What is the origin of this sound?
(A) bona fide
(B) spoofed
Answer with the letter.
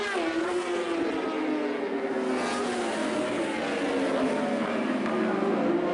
A